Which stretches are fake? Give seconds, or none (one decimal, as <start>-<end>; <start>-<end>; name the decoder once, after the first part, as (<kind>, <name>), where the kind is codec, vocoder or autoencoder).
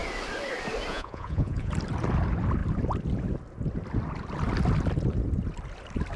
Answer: 0.9-1.7 (vocoder, Vocos)